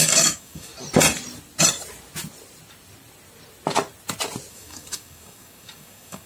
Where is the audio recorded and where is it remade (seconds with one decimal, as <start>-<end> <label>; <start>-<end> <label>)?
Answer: 0.0-0.7 remade; 0.7-4.5 recorded; 4.5-6.3 remade